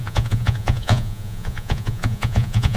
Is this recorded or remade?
remade